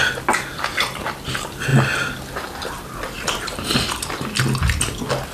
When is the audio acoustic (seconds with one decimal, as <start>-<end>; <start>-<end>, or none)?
0.0-5.3